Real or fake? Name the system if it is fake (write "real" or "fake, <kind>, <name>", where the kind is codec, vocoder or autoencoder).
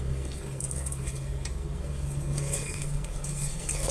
fake, codec, SNAC